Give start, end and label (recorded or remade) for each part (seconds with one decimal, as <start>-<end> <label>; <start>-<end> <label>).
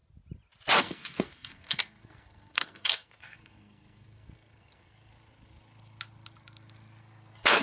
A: 0.0-0.8 recorded; 0.8-5.1 remade; 5.1-7.0 recorded; 7.0-7.6 remade